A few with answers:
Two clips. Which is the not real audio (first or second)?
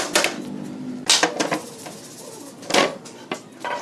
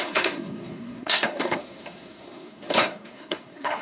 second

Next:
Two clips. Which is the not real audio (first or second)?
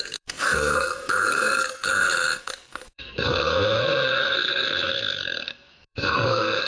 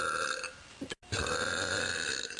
first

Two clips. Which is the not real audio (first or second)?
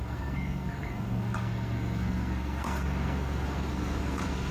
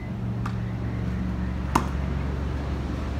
first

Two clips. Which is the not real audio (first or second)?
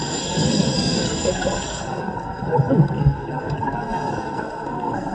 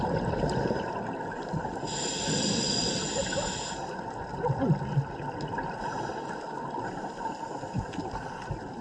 first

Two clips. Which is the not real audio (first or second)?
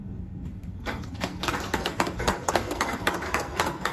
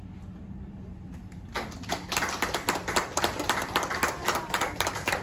first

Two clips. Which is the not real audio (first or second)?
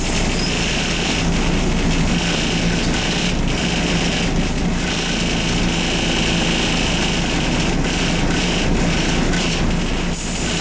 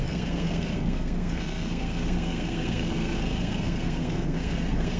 second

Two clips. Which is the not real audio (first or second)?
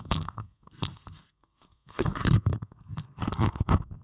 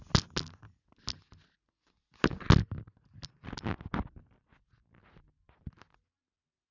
first